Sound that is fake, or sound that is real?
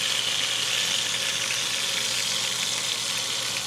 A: real